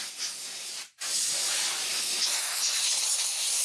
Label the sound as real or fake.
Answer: real